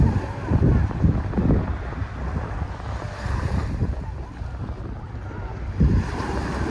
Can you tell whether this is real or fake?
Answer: fake